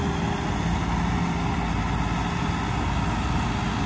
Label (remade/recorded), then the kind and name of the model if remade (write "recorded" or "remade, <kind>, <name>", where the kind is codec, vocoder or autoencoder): recorded